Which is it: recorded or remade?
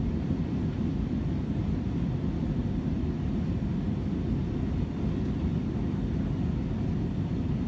recorded